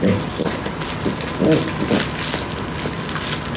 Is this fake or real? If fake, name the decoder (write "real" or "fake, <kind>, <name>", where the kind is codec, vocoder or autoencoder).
real